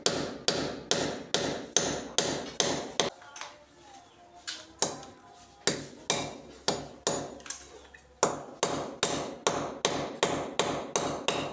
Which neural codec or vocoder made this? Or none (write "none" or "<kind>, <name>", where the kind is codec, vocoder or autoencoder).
none